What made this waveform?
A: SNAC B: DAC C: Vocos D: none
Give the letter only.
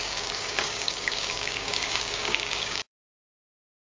B